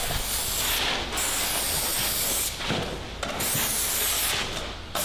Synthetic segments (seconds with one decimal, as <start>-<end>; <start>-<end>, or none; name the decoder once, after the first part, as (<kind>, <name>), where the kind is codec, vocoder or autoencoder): none